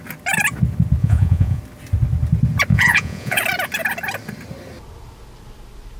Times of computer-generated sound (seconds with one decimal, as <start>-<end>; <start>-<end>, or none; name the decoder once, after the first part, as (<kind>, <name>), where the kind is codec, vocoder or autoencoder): 1.0-1.6 (vocoder, Vocos); 2.7-3.4